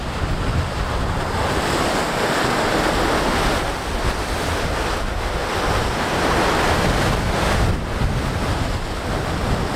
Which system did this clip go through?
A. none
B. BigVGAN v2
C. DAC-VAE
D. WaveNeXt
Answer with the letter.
A